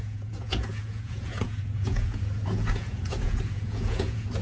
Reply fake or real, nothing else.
fake